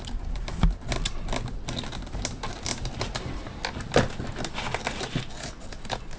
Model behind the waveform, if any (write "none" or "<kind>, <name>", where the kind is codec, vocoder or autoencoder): none